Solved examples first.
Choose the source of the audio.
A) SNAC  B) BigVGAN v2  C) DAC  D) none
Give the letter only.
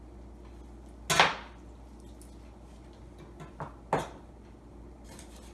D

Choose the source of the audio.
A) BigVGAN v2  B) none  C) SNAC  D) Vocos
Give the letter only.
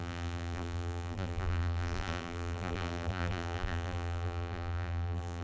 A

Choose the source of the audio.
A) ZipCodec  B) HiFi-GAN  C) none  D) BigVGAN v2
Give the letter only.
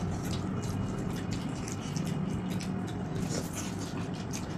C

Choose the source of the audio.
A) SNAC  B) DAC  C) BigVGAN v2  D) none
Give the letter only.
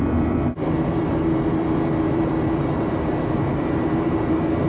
C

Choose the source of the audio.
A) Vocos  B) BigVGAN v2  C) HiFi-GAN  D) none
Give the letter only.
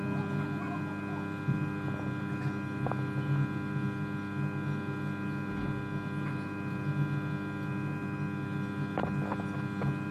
D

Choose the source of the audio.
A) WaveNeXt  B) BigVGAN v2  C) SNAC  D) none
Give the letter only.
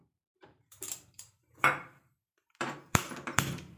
B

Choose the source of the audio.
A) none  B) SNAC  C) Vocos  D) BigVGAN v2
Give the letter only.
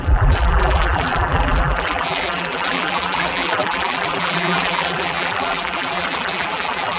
D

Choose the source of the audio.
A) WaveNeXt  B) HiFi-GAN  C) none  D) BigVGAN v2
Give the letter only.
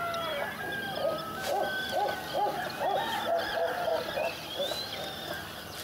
C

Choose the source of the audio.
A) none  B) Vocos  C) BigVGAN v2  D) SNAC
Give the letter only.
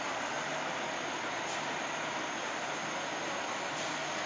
A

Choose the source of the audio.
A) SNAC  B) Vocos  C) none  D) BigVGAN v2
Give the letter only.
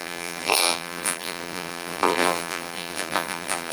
D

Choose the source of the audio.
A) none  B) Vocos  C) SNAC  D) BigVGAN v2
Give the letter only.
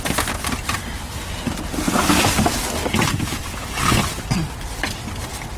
A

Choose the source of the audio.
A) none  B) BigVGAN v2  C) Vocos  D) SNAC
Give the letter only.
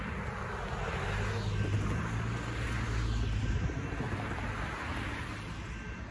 A